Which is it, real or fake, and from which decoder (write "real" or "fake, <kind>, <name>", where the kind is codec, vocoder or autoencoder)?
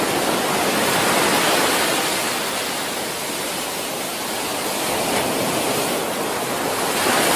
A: real